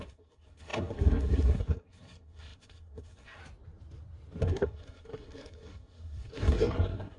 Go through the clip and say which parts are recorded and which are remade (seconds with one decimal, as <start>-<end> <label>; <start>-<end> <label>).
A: 0.0-3.4 remade; 3.4-4.4 recorded; 4.4-7.2 remade